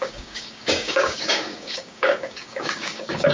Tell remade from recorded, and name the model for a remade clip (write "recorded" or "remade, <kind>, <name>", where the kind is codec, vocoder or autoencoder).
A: remade, codec, DAC